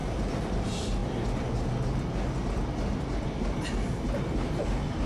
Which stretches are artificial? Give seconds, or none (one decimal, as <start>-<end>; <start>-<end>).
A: none